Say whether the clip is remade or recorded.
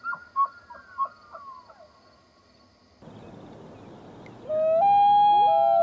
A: recorded